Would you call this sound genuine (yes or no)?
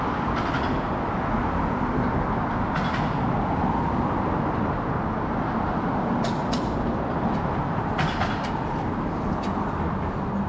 yes